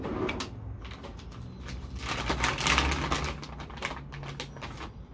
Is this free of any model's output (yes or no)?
yes